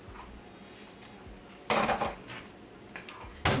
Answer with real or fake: real